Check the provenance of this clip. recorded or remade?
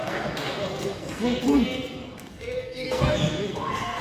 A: remade